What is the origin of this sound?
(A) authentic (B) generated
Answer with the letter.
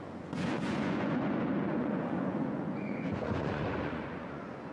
B